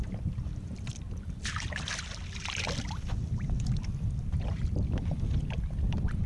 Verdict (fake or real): fake